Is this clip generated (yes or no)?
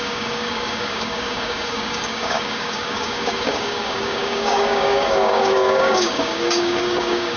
yes